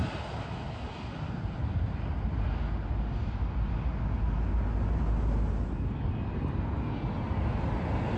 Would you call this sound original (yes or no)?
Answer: yes